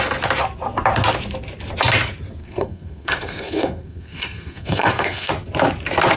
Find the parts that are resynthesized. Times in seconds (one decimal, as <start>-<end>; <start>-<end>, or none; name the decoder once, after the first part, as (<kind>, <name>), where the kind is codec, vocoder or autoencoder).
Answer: 2.4-5.3 (codec, SNAC)